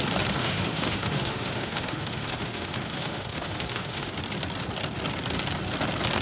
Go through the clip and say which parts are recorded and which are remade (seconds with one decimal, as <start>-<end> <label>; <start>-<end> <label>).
0.0-0.4 recorded; 0.4-4.1 remade; 4.1-6.2 recorded